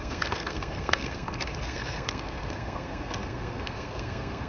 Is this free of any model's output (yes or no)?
no